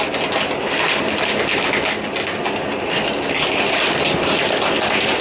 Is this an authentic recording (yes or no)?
yes